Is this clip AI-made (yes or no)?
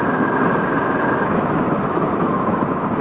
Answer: yes